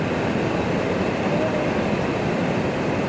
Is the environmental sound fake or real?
real